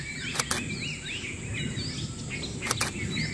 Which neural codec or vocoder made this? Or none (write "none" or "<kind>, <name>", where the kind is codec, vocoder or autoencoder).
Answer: none